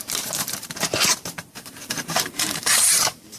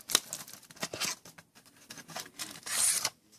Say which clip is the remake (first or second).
first